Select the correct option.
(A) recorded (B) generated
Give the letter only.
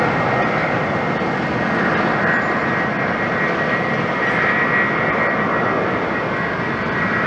B